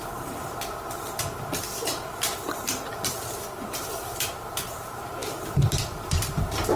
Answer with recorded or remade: remade